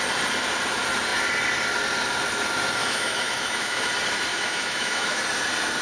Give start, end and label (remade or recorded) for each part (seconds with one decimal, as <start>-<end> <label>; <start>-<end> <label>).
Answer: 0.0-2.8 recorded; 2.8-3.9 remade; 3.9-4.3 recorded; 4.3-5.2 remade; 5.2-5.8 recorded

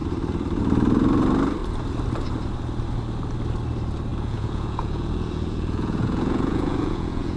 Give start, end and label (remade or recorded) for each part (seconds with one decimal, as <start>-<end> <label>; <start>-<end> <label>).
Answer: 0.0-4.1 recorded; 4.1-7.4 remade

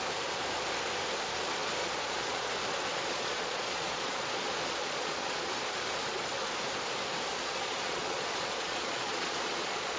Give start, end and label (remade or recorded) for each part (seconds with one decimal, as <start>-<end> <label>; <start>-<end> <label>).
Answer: 0.0-1.8 recorded; 1.8-2.5 remade; 2.5-2.9 recorded; 2.9-5.5 remade; 5.5-7.4 recorded; 7.4-10.0 remade

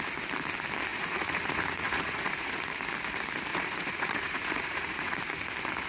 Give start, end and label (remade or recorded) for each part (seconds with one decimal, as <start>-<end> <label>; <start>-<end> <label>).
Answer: 0.0-0.9 recorded; 0.9-2.7 remade; 2.7-3.5 recorded; 3.5-5.2 remade; 5.2-5.9 recorded